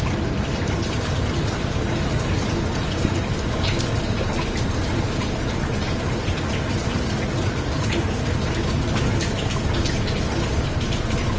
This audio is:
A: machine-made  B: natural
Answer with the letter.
B